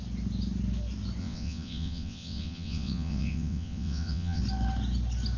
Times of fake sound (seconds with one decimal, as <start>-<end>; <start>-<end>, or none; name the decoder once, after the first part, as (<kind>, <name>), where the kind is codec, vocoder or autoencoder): 1.2-4.4 (vocoder, WaveNeXt)